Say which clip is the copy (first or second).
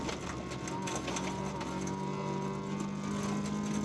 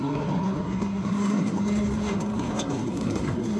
second